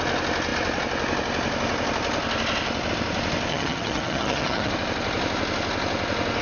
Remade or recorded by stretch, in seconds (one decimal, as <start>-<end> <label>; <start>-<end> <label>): 0.0-3.5 recorded; 3.5-4.7 remade; 4.7-6.4 recorded